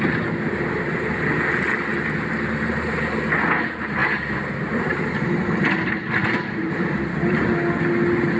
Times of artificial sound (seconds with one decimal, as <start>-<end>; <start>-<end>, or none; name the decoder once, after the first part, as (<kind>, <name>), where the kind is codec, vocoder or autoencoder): none